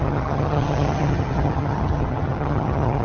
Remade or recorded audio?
remade